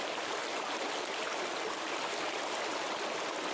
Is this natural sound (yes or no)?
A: yes